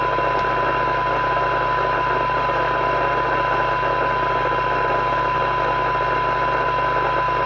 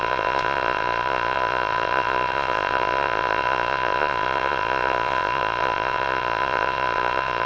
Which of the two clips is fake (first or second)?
second